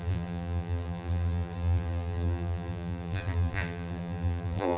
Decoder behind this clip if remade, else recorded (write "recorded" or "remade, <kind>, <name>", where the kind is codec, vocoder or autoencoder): remade, vocoder, BigVGAN v2